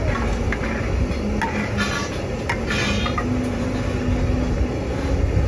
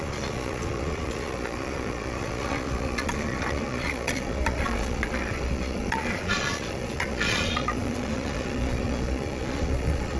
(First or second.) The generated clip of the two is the second